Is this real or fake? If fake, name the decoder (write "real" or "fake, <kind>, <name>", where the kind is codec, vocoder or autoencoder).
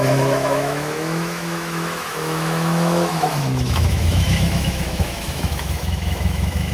fake, autoencoder, DAC-VAE